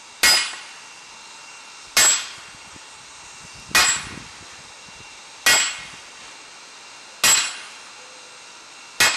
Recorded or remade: recorded